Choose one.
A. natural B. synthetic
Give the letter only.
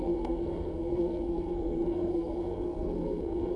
B